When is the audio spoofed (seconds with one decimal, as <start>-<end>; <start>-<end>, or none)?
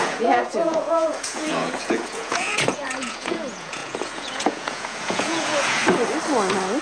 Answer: 0.0-5.8